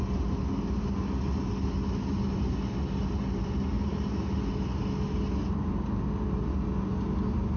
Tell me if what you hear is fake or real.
real